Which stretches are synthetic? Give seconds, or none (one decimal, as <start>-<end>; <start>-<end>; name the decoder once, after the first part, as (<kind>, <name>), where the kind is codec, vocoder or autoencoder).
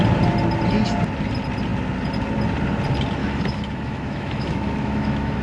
3.2-5.4 (autoencoder, DAC-VAE)